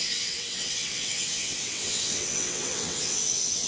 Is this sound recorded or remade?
remade